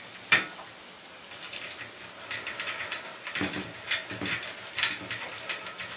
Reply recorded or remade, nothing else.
recorded